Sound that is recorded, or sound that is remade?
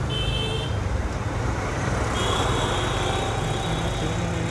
recorded